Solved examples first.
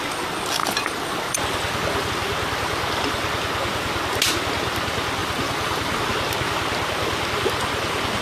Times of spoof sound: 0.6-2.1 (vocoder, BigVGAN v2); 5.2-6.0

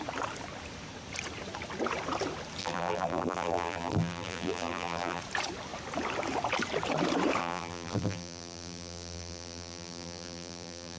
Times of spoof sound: 2.6-5.2 (vocoder, BigVGAN v2); 7.4-11.0

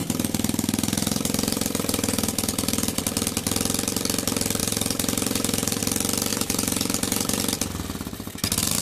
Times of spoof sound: 0.0-3.0 (vocoder, BigVGAN v2); 4.6-5.8; 6.3-7.4

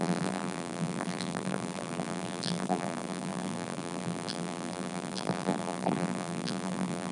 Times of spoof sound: 0.0-7.1 (vocoder, BigVGAN v2)